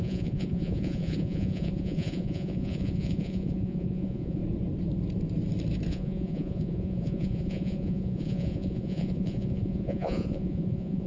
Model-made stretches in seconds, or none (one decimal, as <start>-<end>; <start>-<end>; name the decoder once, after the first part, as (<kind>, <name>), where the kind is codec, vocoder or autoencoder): 0.0-4.4 (vocoder, Vocos); 5.9-11.1